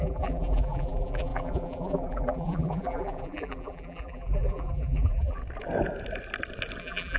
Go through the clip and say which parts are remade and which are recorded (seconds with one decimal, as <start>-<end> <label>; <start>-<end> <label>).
0.0-5.4 remade; 5.4-6.8 recorded; 6.8-7.2 remade

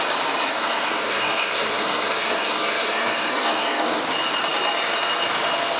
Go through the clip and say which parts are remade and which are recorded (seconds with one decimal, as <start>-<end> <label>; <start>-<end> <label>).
0.0-0.5 recorded; 0.5-4.0 remade; 4.0-5.8 recorded

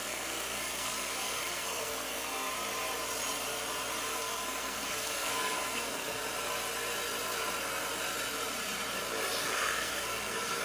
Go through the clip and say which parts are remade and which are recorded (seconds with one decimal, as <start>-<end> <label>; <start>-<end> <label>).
0.0-2.5 remade; 2.5-4.1 recorded; 4.1-6.2 remade; 6.2-9.4 recorded; 9.4-10.6 remade